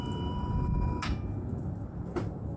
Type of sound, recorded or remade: recorded